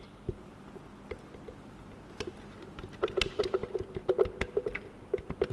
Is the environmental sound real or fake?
real